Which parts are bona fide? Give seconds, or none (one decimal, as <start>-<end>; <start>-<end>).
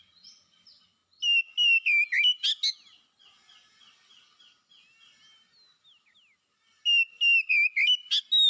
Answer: 0.0-8.5